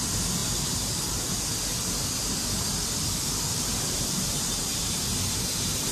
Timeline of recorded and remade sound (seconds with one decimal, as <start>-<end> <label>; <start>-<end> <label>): 0.0-0.4 recorded; 0.4-1.3 remade; 1.3-3.5 recorded; 3.5-4.8 remade; 4.8-5.9 recorded